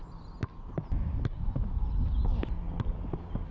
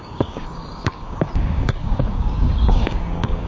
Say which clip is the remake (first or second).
second